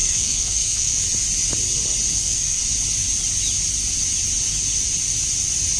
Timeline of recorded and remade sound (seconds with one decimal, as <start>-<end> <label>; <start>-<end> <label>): 0.0-1.0 remade; 1.0-2.1 recorded; 2.1-2.6 remade; 2.6-5.8 recorded